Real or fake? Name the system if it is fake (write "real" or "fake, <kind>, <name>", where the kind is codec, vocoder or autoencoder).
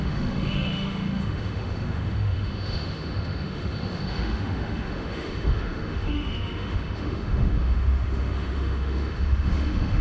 fake, autoencoder, DAC-VAE